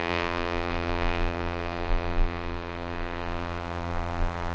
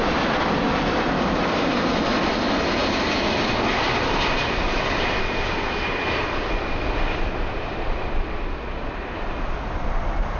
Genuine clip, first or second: second